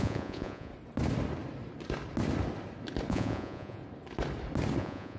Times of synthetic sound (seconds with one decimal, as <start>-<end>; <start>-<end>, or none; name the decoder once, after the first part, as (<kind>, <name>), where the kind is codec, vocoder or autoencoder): 0.0-0.7 (vocoder, Vocos); 3.1-3.8; 4.8-5.2